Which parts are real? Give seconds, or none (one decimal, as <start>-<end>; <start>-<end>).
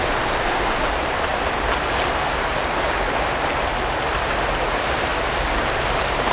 1.3-2.1